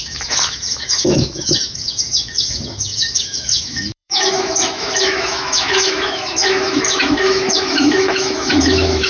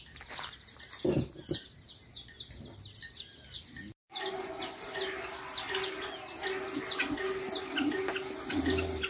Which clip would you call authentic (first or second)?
second